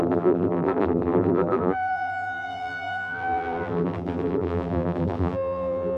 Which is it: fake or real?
fake